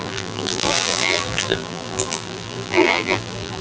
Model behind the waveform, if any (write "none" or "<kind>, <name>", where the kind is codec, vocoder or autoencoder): vocoder, BigVGAN v2